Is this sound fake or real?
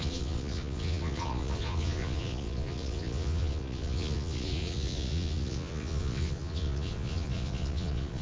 fake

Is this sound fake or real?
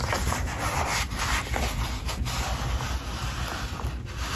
real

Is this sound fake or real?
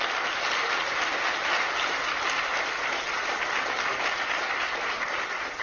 real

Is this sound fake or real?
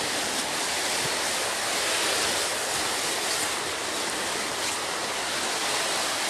real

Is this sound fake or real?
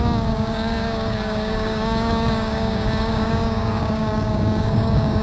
fake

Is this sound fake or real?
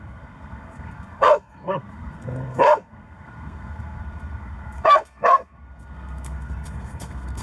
fake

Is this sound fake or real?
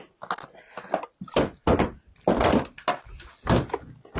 real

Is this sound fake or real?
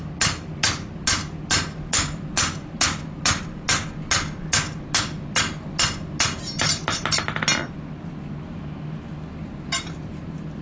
real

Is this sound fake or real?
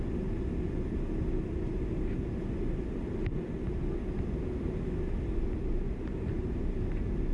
real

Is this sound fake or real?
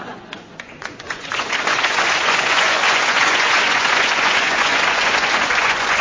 fake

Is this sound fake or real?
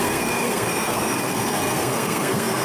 fake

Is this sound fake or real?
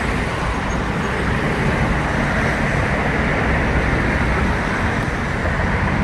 real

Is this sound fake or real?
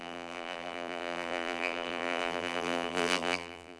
fake